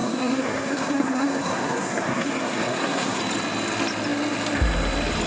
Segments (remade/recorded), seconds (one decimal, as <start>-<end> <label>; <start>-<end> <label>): 0.0-3.2 remade; 3.2-5.3 recorded